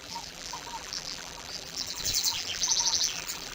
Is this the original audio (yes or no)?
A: no